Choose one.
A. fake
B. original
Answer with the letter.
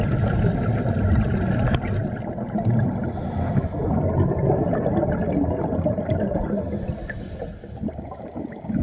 B